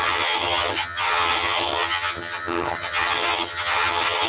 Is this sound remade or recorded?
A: remade